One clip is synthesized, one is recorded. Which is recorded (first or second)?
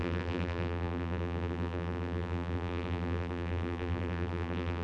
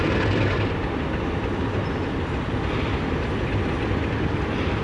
second